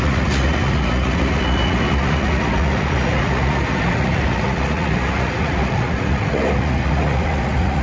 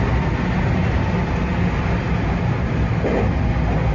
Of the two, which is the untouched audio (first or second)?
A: second